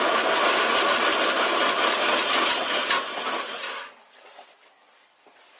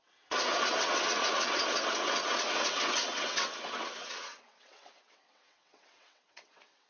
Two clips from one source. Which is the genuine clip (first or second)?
first